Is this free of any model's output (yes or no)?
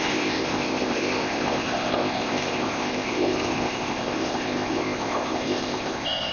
no